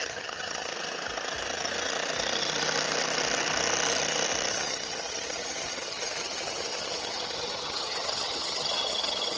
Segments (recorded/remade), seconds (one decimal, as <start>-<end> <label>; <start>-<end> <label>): 0.0-0.7 remade; 0.7-4.5 recorded; 4.5-9.4 remade